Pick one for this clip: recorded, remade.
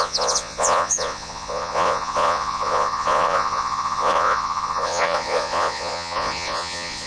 remade